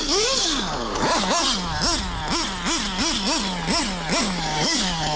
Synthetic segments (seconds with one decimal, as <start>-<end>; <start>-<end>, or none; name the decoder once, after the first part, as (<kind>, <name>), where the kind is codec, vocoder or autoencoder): 0.0-1.1 (codec, DAC); 4.2-5.2